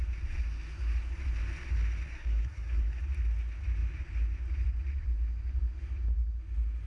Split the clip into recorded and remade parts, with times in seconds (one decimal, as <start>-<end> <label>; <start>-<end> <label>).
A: 0.0-2.1 recorded; 2.1-3.0 remade; 3.0-6.9 recorded